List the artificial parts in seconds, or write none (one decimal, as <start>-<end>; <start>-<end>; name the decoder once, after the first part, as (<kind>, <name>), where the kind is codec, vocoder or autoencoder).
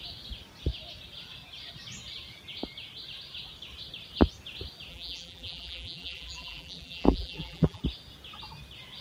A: 4.9-7.8 (vocoder, BigVGAN v2)